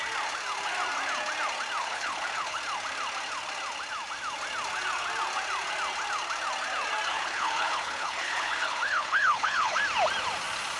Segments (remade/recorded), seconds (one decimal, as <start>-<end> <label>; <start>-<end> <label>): 0.0-1.8 recorded; 1.8-2.6 remade; 2.6-7.1 recorded; 7.1-9.8 remade; 9.8-10.8 recorded